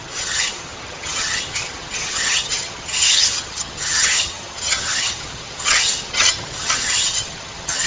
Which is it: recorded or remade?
remade